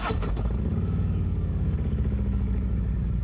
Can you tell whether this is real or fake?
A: fake